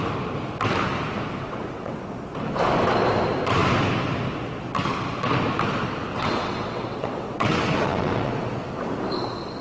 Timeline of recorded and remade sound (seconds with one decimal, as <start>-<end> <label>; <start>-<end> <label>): 0.0-1.4 recorded; 1.4-2.0 remade; 2.0-6.1 recorded; 6.1-8.3 remade; 8.3-9.6 recorded